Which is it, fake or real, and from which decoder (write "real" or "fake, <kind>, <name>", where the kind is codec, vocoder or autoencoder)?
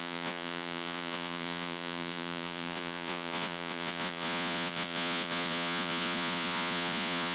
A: fake, vocoder, Vocos